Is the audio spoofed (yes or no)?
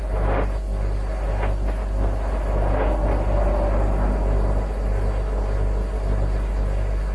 no